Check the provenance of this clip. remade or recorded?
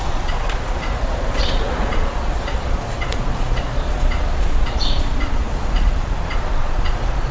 remade